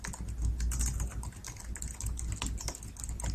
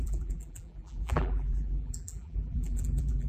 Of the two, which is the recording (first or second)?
first